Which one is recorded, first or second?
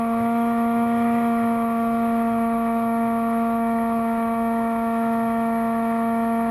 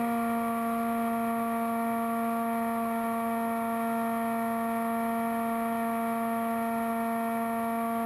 second